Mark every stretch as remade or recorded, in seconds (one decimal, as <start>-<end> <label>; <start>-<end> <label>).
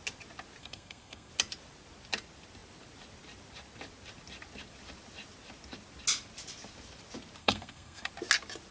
0.0-0.6 recorded; 0.6-1.3 remade; 1.3-7.4 recorded; 7.4-8.1 remade; 8.1-8.7 recorded